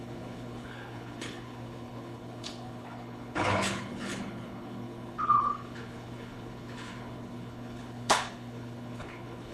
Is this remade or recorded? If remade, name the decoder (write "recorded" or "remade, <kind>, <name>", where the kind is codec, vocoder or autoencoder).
remade, codec, HILCodec